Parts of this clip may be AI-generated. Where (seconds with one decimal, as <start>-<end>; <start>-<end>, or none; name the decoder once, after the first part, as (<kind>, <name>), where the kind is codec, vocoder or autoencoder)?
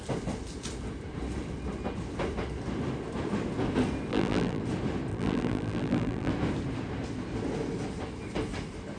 4.1-4.6 (vocoder, BigVGAN v2); 5.1-6.3